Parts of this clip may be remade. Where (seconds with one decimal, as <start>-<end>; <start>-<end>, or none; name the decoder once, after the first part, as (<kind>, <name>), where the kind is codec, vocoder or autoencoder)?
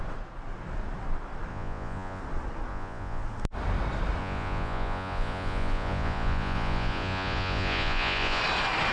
1.5-2.2 (vocoder, Vocos); 2.7-3.2; 4.2-8.4